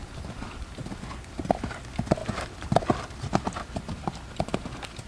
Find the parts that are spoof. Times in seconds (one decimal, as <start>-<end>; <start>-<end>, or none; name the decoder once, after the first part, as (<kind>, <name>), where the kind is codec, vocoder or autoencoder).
none